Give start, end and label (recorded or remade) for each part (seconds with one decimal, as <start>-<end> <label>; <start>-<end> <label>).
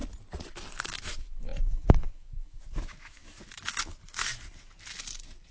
0.0-0.7 recorded; 0.7-4.3 remade; 4.3-5.5 recorded